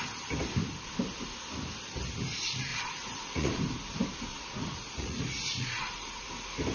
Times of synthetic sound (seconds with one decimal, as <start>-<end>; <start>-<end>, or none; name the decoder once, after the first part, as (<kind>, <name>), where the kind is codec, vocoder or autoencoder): 2.7-3.6 (vocoder, Vocos); 4.3-6.3

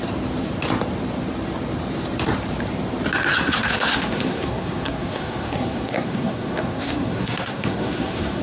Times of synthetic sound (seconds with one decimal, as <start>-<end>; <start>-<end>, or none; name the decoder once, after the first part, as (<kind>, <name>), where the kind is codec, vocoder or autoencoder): 3.3-8.4 (codec, SNAC)

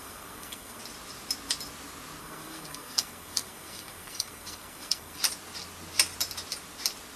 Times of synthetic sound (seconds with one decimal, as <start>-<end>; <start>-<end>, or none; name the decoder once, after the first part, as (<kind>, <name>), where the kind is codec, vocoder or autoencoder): 0.0-0.8 (codec, SNAC); 2.2-5.2

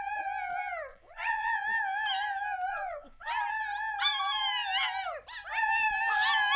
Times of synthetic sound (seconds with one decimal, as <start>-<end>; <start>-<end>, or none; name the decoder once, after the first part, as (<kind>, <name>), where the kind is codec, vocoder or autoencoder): 0.9-1.5 (vocoder, Vocos); 2.7-3.3

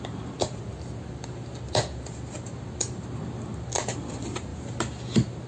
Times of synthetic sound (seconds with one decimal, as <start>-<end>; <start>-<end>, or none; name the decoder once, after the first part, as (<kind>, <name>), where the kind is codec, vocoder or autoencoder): none

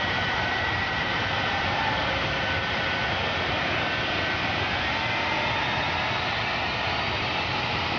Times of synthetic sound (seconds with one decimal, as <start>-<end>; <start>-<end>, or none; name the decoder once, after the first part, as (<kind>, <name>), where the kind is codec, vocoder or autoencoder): 0.0-3.0 (vocoder, BigVGAN v2); 7.5-8.0